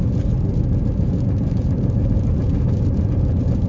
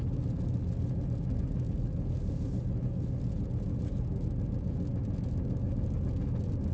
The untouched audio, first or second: second